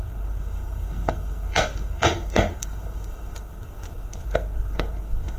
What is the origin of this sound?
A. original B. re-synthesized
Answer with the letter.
B